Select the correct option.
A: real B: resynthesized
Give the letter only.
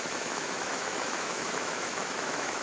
B